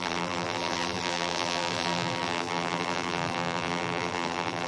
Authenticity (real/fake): fake